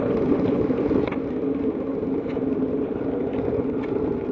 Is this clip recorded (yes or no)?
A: yes